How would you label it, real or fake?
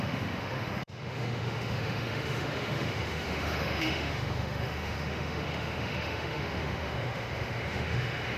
fake